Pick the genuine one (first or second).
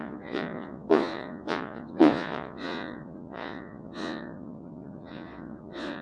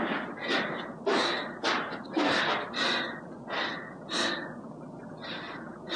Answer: second